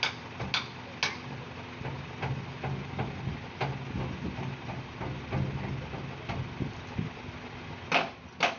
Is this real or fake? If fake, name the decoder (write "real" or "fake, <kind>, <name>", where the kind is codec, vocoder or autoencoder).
real